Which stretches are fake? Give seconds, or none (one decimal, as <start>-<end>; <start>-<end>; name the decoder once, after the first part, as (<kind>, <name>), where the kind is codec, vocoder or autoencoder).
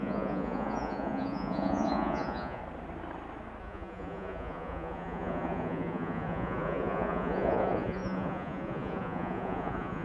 0.0-2.6 (vocoder, Vocos); 3.6-10.0